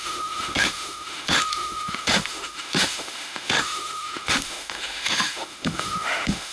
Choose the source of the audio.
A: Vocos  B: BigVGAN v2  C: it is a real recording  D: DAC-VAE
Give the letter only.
D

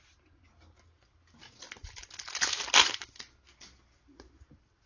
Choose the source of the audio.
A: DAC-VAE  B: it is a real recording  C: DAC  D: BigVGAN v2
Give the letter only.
B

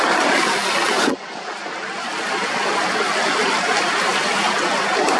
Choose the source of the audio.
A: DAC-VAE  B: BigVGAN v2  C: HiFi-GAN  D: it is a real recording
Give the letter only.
D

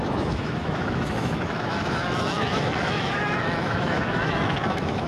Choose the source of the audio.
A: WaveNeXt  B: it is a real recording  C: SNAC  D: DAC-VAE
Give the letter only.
D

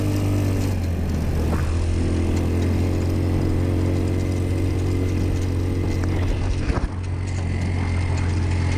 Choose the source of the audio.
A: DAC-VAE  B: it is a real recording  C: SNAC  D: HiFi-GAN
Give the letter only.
B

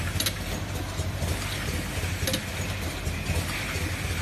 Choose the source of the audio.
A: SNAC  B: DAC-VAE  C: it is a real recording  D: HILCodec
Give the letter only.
C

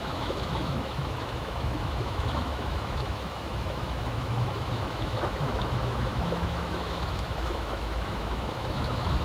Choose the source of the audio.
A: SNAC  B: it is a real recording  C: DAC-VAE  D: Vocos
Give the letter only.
C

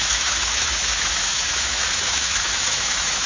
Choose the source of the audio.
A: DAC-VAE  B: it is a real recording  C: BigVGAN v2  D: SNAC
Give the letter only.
A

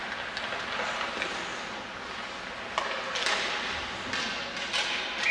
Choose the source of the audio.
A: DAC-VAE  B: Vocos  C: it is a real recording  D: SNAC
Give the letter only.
C